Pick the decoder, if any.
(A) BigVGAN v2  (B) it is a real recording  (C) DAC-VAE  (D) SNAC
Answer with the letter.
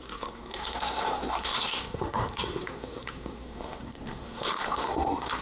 D